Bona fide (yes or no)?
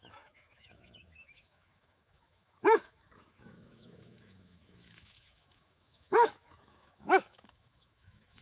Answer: no